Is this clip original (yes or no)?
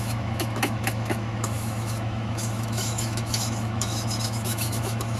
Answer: no